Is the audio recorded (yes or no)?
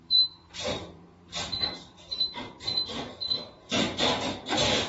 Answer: no